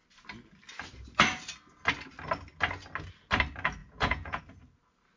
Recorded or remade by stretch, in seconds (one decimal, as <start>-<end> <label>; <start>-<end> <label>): 0.0-3.8 recorded; 3.8-4.4 remade; 4.4-5.2 recorded